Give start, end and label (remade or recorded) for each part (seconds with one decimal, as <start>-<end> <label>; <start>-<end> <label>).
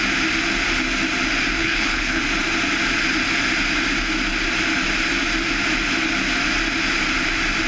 0.0-1.6 recorded; 1.6-2.2 remade; 2.2-7.7 recorded